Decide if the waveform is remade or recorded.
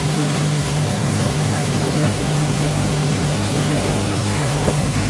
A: remade